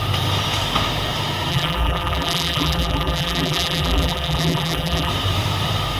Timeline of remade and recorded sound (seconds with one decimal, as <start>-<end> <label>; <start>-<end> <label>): 0.0-1.5 recorded; 1.5-5.1 remade; 5.1-6.0 recorded